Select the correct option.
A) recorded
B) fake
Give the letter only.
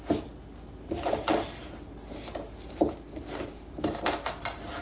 A